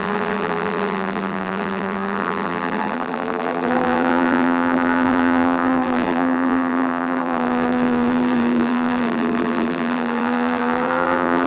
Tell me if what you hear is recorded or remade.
remade